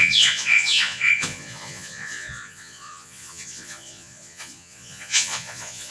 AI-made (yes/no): yes